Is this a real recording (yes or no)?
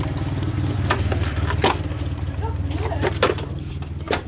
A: yes